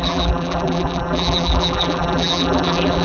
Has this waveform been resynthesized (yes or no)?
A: yes